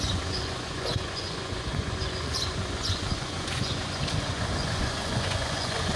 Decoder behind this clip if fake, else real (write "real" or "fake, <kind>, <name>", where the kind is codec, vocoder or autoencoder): fake, vocoder, Vocos